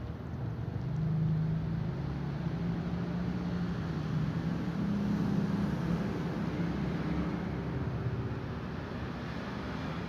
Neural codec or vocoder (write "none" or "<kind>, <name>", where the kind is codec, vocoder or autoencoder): none